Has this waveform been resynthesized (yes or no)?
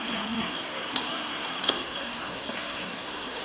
yes